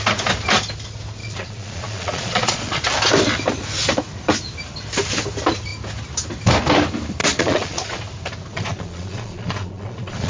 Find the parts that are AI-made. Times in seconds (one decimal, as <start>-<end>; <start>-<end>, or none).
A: 1.2-2.8; 7.2-8.0; 8.5-10.3